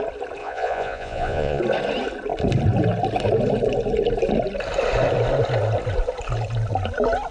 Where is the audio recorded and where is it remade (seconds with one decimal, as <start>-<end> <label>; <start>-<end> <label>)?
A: 0.0-0.4 recorded; 0.4-1.6 remade; 1.6-7.3 recorded